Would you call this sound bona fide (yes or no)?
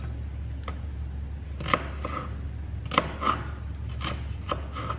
yes